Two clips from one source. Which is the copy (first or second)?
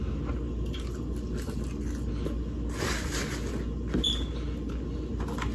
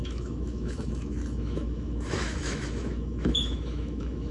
second